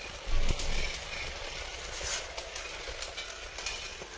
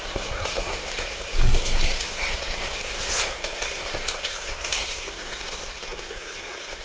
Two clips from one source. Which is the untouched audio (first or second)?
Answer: first